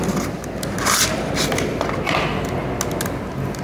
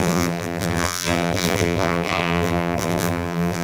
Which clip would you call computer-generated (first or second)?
second